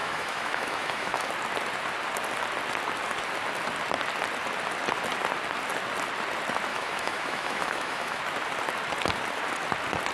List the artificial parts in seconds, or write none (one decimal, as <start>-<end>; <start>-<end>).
0.0-1.3; 6.7-8.2